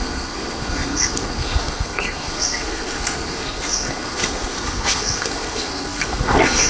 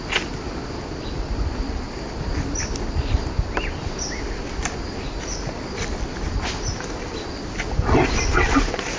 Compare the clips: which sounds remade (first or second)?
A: first